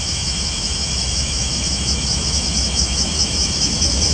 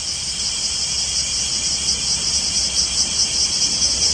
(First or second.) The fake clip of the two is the first